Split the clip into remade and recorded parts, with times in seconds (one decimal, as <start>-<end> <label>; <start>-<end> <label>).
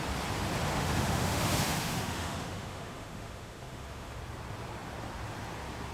0.0-0.7 recorded; 0.7-4.2 remade; 4.2-5.9 recorded